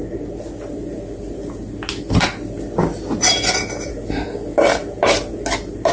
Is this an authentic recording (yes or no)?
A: yes